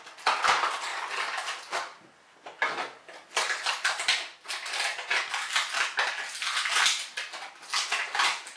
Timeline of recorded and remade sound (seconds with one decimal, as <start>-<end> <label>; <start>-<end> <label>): 0.0-8.6 recorded